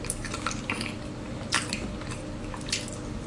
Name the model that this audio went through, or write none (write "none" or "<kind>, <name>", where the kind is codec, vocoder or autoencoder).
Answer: none